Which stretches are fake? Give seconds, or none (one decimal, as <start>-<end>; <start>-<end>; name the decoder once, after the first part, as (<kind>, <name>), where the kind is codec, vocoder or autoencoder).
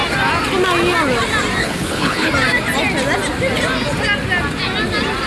1.6-2.3 (codec, HILCodec)